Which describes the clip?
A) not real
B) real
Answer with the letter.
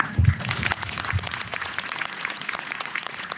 A